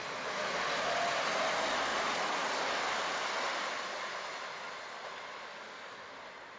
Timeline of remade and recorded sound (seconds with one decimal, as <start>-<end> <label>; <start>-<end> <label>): 0.0-5.5 recorded; 5.5-6.1 remade; 6.1-6.6 recorded